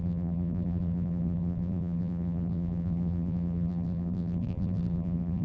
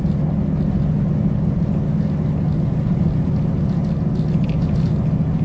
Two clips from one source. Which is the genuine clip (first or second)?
second